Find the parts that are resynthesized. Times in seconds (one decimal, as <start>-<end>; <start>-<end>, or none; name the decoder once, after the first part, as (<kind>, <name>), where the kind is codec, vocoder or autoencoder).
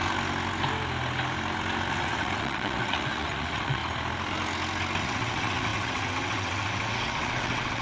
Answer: 1.9-3.8 (vocoder, WaveNeXt); 5.0-7.8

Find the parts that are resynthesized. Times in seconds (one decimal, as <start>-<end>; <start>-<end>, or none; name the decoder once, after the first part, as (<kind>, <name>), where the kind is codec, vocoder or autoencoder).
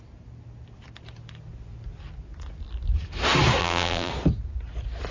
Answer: 3.6-4.1 (vocoder, BigVGAN v2)